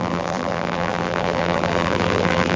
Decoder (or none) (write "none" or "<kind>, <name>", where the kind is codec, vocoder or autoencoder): vocoder, BigVGAN v2